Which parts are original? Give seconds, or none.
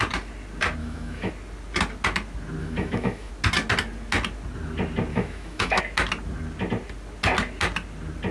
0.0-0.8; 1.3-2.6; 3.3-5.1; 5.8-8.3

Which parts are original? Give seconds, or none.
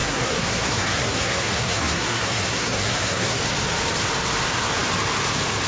3.4-5.7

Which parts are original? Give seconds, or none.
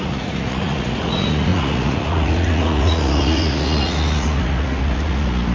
none